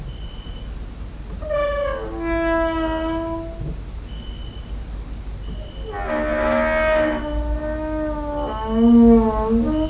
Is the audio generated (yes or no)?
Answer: no